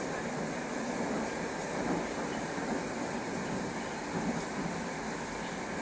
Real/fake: real